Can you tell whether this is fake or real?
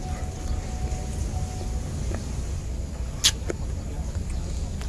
real